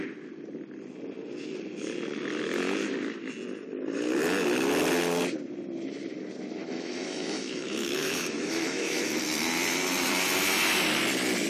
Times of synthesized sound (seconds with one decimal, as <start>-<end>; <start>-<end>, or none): 6.6-9.1